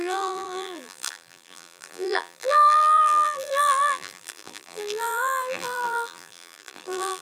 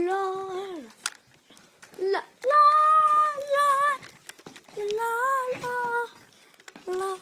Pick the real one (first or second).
second